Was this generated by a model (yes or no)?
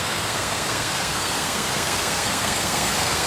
yes